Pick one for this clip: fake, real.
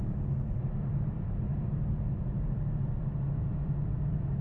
fake